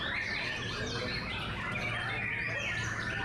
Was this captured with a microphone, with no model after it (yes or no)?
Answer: yes